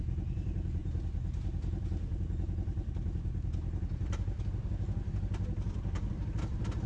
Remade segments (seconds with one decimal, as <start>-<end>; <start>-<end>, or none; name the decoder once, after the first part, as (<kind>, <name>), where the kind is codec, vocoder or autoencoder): none